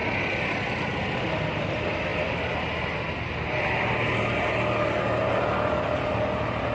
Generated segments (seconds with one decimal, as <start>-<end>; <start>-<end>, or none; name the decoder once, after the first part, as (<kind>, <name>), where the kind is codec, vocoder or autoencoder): none